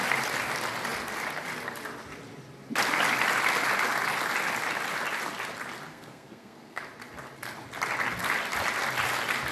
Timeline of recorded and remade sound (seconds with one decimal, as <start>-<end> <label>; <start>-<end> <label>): 0.0-5.9 recorded; 5.9-6.8 remade; 6.8-9.5 recorded